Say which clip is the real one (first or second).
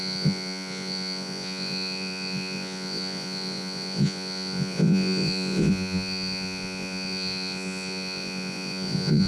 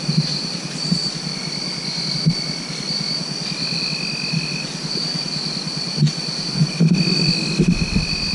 second